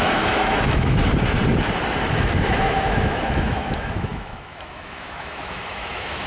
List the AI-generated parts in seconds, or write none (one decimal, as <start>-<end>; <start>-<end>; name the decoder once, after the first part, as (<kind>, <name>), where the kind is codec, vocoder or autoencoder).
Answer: 0.0-1.0 (autoencoder, DAC-VAE); 2.1-6.3